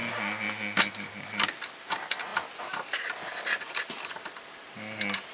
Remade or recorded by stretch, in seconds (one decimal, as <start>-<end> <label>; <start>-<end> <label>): 0.0-5.3 recorded